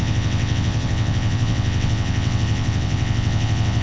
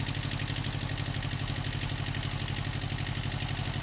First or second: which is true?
second